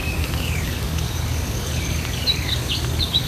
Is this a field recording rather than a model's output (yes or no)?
no